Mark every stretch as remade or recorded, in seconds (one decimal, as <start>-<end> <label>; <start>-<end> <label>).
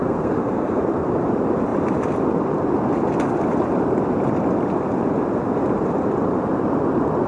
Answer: 0.0-0.8 remade; 0.8-7.3 recorded